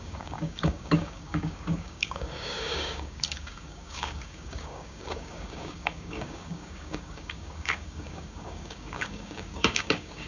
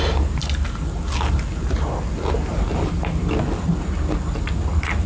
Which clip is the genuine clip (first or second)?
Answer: second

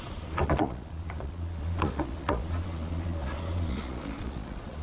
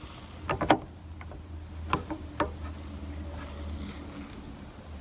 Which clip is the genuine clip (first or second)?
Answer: second